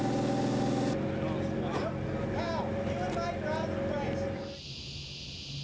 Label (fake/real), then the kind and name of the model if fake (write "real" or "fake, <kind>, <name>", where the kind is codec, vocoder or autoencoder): real